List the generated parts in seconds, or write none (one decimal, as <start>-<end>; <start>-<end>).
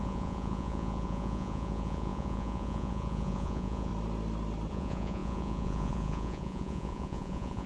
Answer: 0.0-3.9; 4.7-7.7